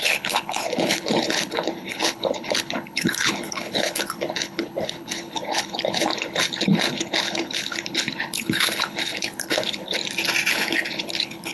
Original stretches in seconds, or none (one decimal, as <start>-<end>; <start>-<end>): 10.0-10.5